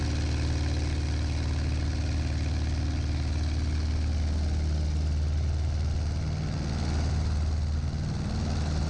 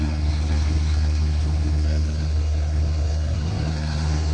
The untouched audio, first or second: first